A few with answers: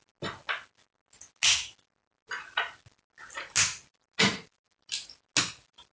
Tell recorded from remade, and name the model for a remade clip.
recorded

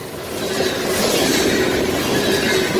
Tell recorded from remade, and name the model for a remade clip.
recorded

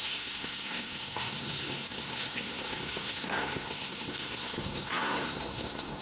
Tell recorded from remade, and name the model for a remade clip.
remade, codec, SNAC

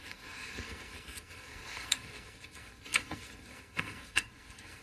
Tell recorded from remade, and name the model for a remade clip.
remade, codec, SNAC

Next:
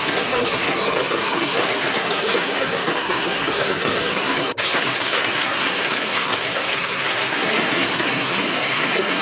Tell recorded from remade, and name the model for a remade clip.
remade, codec, SNAC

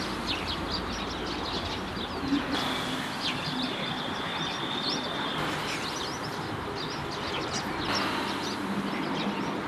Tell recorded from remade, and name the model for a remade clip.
recorded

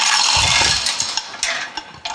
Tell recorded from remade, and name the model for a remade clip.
recorded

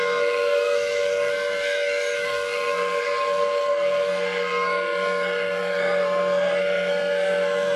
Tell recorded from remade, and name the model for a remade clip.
remade, codec, SNAC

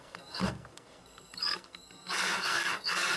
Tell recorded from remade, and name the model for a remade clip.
remade, codec, SNAC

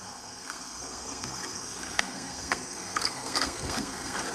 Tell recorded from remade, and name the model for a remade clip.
remade, codec, SNAC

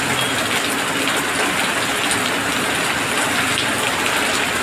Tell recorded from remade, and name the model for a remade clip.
recorded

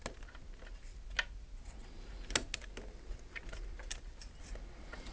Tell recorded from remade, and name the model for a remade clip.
recorded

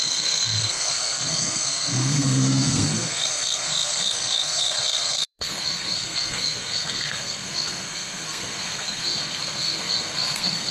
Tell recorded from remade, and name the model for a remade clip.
remade, codec, SNAC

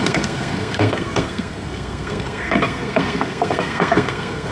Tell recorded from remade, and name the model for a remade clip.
remade, codec, SNAC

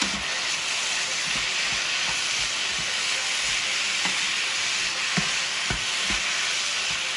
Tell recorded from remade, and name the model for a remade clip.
recorded